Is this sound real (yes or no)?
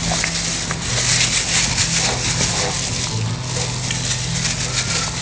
yes